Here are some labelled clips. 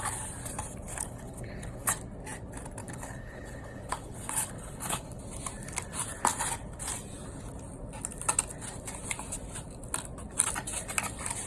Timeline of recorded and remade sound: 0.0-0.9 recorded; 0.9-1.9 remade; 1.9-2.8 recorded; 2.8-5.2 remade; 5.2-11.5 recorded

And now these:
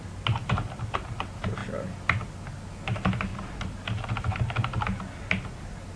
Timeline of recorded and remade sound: 0.0-6.0 recorded

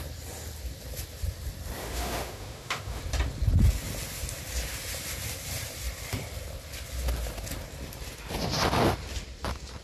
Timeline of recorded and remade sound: 0.0-1.8 recorded; 1.8-3.0 remade; 3.0-9.8 recorded

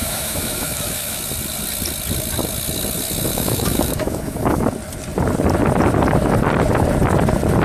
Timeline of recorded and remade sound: 0.0-1.2 remade; 1.2-3.3 recorded; 3.3-4.6 remade; 4.6-7.6 recorded